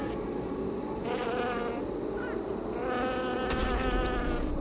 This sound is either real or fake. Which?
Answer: real